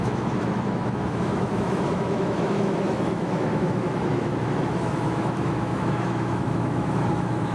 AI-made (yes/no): yes